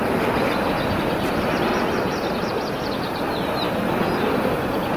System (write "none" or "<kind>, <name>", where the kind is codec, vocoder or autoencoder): none